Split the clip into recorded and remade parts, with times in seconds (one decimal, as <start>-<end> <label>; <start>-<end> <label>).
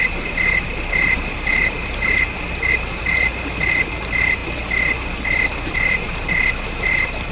0.0-4.4 remade; 4.4-5.7 recorded; 5.7-7.3 remade